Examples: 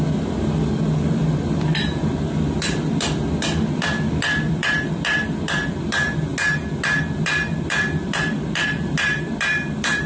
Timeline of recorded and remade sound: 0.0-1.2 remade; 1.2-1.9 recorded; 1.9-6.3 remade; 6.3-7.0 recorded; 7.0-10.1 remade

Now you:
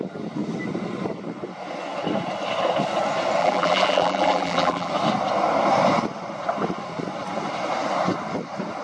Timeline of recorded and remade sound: 0.0-3.4 recorded; 3.4-4.9 remade; 4.9-8.8 recorded